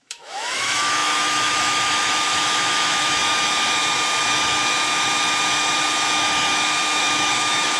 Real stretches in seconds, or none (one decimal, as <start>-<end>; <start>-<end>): 3.2-7.0